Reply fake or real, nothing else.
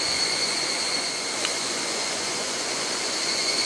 fake